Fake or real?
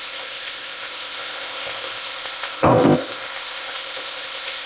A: fake